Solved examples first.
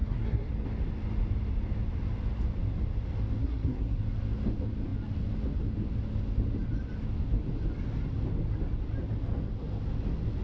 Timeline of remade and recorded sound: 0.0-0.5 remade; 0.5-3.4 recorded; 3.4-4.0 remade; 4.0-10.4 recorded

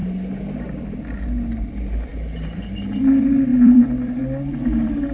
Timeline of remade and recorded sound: 0.0-3.5 recorded; 3.5-4.2 remade; 4.2-5.1 recorded

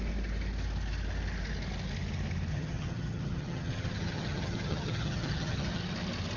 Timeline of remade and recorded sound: 0.0-2.5 recorded; 2.5-5.8 remade; 5.8-6.4 recorded

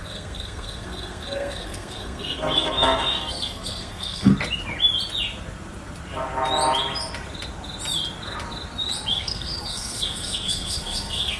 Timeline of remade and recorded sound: 0.0-4.3 remade; 4.3-9.1 recorded; 9.1-11.4 remade